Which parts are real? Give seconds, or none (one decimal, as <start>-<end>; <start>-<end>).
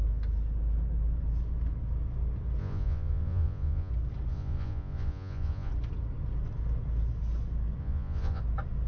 0.0-2.6; 3.9-4.3; 5.7-7.8; 8.4-8.9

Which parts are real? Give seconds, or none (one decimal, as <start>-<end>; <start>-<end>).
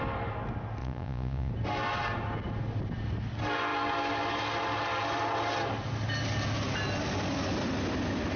0.0-0.8; 1.5-8.4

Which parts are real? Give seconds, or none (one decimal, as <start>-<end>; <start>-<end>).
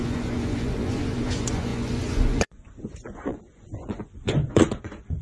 none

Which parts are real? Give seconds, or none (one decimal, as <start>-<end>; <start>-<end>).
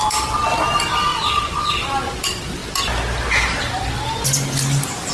0.0-1.1; 1.7-5.1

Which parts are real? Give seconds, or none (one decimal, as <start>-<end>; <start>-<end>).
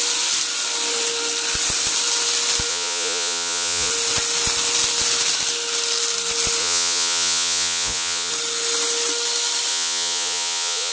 0.0-2.7; 3.9-6.6; 8.3-9.7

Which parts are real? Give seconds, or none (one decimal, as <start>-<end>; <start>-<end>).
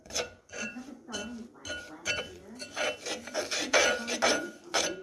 1.2-1.8; 2.4-4.3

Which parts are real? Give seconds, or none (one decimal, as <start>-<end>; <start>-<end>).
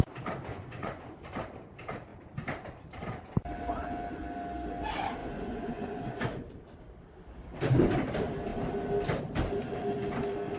0.0-0.5; 1.2-5.2; 6.2-10.6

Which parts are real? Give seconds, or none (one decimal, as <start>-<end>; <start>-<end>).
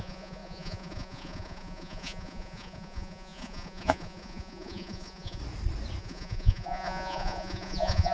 5.4-6.0